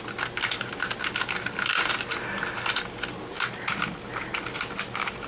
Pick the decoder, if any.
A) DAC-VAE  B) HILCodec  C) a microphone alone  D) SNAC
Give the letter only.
C